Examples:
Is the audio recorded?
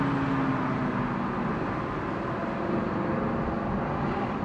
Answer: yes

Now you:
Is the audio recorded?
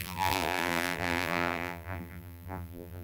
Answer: no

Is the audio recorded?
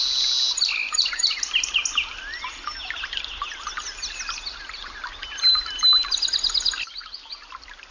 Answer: yes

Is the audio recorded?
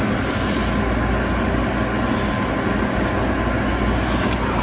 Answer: yes